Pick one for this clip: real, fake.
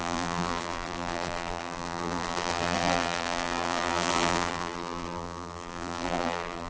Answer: fake